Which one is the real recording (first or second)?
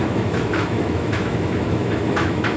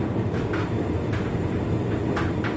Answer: second